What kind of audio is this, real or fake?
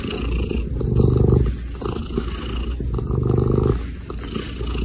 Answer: real